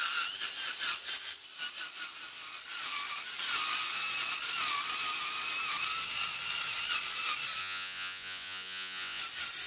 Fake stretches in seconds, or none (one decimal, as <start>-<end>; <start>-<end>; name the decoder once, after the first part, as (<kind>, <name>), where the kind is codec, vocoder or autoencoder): 7.6-9.2 (vocoder, Vocos)